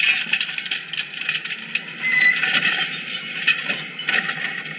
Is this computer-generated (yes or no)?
no